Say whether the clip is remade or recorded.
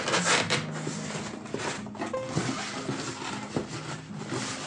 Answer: recorded